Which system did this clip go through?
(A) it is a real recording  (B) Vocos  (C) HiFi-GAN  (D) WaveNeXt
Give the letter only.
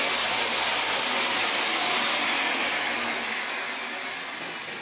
A